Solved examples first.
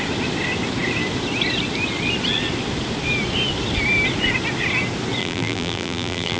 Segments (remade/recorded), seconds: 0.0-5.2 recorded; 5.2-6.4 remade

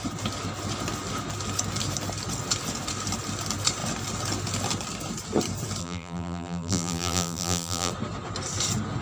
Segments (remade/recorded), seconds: 0.0-5.8 recorded; 5.8-7.9 remade; 7.9-9.0 recorded

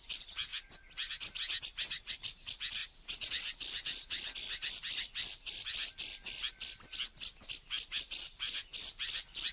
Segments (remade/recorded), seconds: 0.0-2.8 recorded; 2.8-3.3 remade; 3.3-9.5 recorded

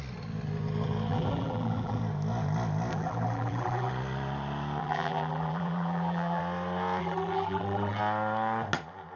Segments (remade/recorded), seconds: 0.0-1.1 recorded; 1.1-2.0 remade; 2.0-2.9 recorded; 2.9-3.9 remade; 3.9-4.8 recorded; 4.8-6.4 remade; 6.4-7.0 recorded; 7.0-8.0 remade; 8.0-9.2 recorded

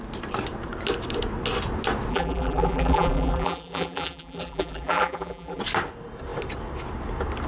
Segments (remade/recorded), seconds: 0.0-2.1 recorded; 2.1-5.6 remade; 5.6-7.5 recorded

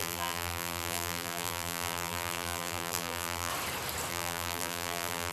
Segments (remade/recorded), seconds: 0.0-3.5 remade; 3.5-4.1 recorded; 4.1-5.3 remade

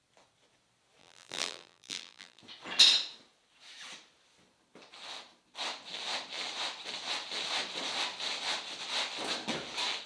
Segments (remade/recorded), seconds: 0.0-1.0 recorded; 1.0-2.4 remade; 2.4-10.1 recorded

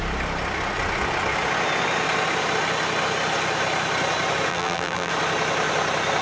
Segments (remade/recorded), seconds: 0.0-4.5 recorded; 4.5-5.1 remade; 5.1-6.2 recorded